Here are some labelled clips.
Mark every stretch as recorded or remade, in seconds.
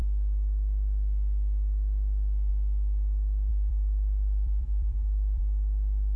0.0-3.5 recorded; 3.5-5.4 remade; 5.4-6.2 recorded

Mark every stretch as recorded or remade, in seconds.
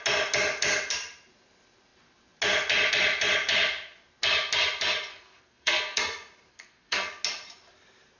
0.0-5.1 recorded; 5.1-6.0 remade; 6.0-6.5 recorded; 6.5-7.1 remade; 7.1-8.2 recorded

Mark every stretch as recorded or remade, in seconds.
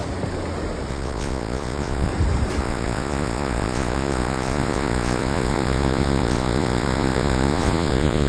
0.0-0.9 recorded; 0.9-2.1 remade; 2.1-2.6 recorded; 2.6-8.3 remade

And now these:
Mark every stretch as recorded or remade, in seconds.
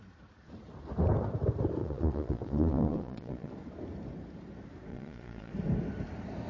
0.0-1.8 recorded; 1.8-3.5 remade; 3.5-4.9 recorded; 4.9-5.5 remade; 5.5-6.5 recorded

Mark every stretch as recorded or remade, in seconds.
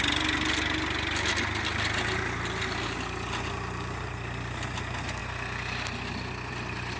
0.0-7.0 recorded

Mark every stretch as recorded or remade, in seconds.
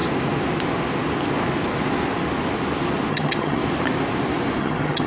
0.0-3.1 recorded; 3.1-3.6 remade; 3.6-4.6 recorded; 4.6-5.1 remade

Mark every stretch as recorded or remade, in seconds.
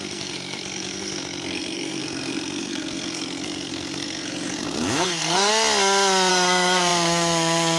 0.0-5.5 remade; 5.5-6.3 recorded; 6.3-7.8 remade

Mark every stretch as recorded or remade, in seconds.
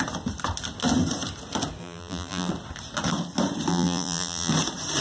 0.0-1.8 recorded; 1.8-2.5 remade; 2.5-3.7 recorded; 3.7-4.5 remade; 4.5-5.0 recorded